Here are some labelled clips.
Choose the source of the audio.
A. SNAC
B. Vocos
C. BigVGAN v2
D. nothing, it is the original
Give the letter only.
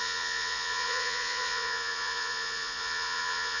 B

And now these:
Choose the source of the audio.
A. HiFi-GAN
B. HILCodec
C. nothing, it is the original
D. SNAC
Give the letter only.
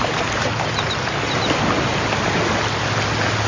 C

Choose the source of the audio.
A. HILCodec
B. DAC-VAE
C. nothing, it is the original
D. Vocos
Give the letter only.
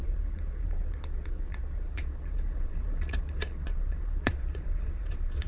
D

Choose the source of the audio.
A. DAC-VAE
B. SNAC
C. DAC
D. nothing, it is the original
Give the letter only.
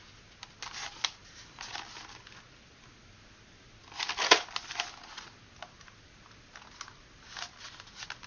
D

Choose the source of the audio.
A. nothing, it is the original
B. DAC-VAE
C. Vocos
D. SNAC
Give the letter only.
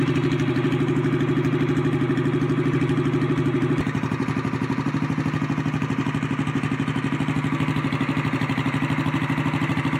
A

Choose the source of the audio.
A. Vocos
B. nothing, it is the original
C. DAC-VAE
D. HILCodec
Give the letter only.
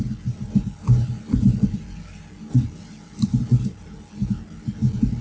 B